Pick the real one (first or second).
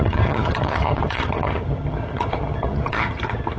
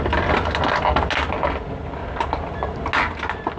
second